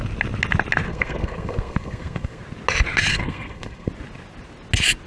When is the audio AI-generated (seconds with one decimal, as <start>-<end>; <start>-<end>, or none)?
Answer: 0.9-2.4; 3.1-3.9